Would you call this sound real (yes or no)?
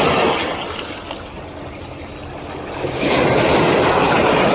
yes